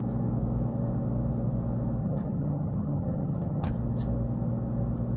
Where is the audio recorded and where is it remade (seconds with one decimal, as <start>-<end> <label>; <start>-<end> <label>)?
0.0-2.0 recorded; 2.0-3.7 remade; 3.7-5.2 recorded